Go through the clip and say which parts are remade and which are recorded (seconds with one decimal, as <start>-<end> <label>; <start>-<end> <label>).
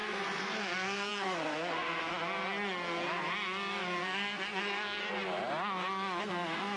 0.0-2.1 remade; 2.1-4.0 recorded; 4.0-5.0 remade; 5.0-6.2 recorded; 6.2-6.8 remade